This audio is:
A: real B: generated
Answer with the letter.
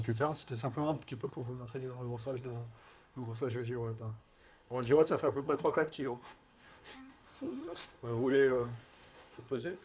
B